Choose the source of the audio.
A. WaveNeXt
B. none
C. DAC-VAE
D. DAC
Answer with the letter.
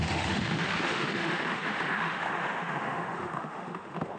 C